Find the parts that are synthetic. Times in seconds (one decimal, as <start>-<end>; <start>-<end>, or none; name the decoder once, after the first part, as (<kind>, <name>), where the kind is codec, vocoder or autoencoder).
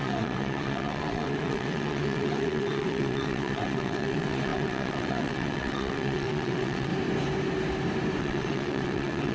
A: 0.0-6.9 (vocoder, WaveNeXt); 8.2-9.3